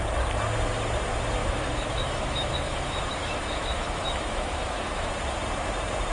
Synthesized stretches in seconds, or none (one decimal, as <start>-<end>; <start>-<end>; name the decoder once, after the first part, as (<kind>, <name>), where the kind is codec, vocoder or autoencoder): 1.4-5.1 (autoencoder, DAC-VAE)